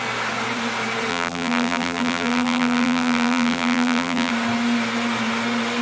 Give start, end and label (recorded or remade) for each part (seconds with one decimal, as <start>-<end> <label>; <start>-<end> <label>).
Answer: 0.0-1.1 recorded; 1.1-4.3 remade; 4.3-5.8 recorded